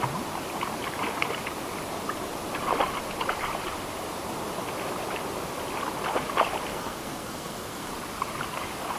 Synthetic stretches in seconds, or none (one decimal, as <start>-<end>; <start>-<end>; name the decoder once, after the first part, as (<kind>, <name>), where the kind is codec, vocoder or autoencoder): 6.7-7.9 (codec, SNAC)